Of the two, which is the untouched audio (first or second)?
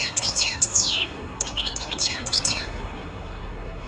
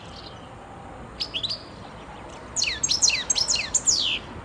second